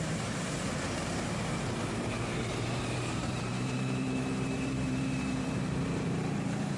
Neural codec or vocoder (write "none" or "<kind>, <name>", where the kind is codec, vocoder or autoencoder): vocoder, BigVGAN v2